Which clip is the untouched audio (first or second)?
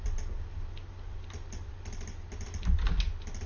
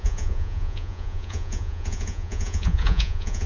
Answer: first